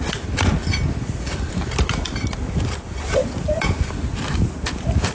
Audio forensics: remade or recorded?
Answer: recorded